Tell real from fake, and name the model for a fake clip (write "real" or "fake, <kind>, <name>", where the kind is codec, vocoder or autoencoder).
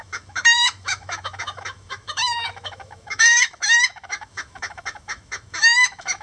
fake, autoencoder, DAC-VAE